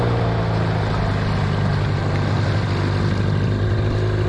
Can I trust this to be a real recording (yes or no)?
yes